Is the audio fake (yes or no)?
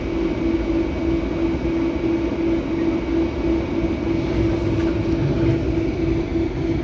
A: no